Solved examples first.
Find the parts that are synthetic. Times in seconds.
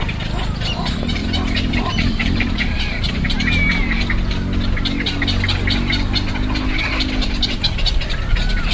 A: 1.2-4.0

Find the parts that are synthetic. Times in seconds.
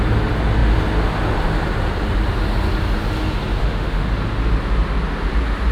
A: 3.6-4.1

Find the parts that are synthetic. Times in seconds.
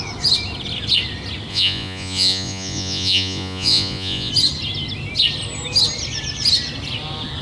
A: 1.5-4.3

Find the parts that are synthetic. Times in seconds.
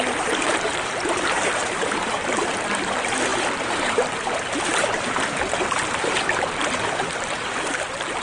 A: 0.0-8.2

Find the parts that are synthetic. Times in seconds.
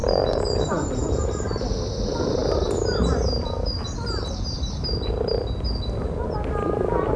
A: 0.0-2.0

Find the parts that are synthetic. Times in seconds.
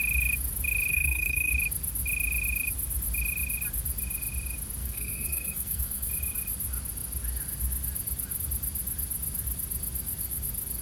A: 0.9-1.5; 4.8-6.1